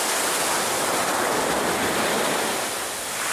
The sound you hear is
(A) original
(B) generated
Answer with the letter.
A